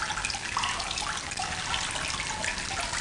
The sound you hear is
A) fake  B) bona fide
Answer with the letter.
B